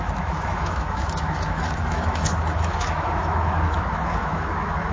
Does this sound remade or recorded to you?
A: remade